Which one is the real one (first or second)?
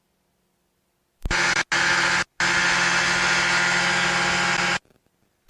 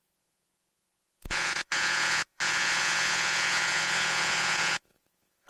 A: first